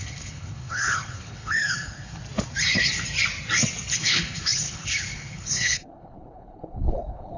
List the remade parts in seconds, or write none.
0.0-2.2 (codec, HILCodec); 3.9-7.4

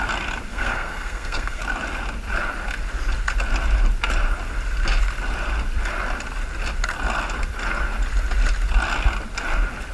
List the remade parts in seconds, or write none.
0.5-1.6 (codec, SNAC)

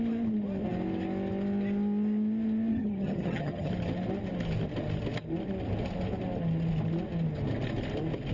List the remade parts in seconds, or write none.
2.7-3.7 (vocoder, HiFi-GAN)

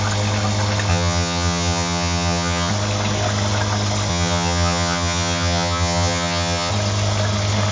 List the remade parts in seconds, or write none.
0.9-2.7 (vocoder, HiFi-GAN); 4.1-6.7